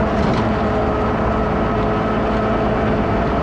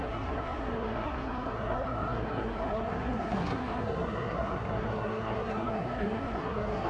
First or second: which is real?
first